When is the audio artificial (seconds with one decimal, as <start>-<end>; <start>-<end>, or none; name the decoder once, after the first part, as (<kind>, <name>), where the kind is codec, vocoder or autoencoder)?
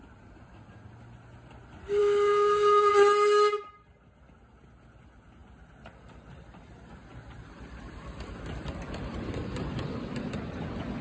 2.0-2.9 (autoencoder, DAC-VAE)